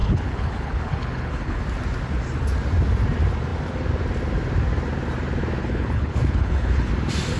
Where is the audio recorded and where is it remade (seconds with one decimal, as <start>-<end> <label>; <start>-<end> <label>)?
0.0-1.6 remade; 1.6-5.6 recorded; 5.6-6.9 remade; 6.9-7.4 recorded